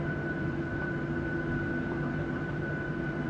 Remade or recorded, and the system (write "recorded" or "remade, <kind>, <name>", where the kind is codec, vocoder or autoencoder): remade, vocoder, BigVGAN v2